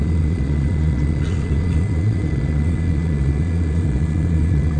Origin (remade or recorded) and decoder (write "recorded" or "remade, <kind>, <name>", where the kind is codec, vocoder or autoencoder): remade, vocoder, Vocos